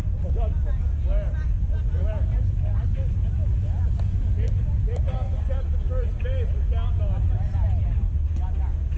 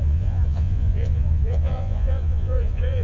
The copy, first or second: second